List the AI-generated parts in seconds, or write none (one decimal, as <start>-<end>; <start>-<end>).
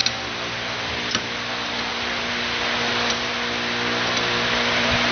none